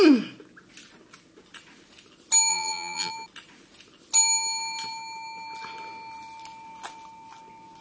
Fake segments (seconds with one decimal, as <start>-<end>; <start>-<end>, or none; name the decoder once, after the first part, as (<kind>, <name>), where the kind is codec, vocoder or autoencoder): 2.5-3.1 (vocoder, BigVGAN v2)